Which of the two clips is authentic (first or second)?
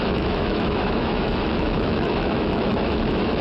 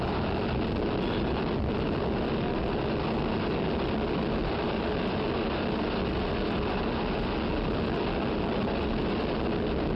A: second